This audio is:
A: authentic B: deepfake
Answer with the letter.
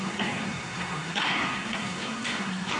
B